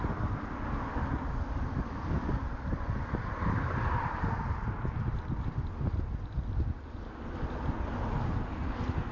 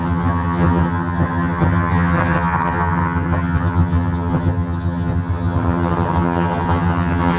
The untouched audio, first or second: first